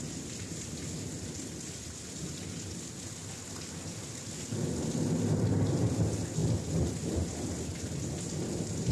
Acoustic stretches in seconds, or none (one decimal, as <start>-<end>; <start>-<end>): 0.0-8.9